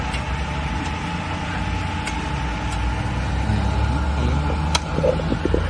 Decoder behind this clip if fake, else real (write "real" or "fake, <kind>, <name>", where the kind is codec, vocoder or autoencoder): real